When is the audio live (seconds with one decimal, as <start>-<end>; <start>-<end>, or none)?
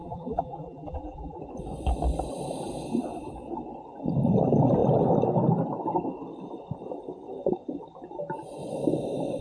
1.4-9.4